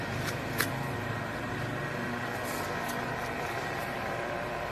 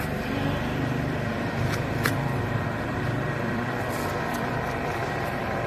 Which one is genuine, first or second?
first